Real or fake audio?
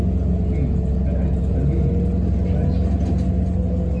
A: real